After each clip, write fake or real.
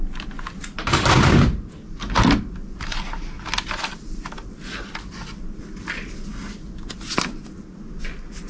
real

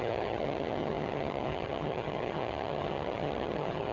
fake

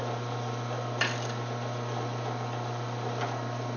real